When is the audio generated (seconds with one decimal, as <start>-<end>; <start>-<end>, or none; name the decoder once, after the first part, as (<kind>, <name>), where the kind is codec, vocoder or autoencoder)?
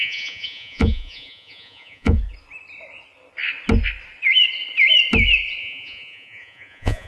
0.0-2.2 (vocoder, Vocos); 5.6-7.1